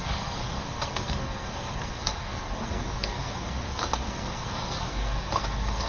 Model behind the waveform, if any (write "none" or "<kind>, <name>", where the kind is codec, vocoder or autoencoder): codec, SNAC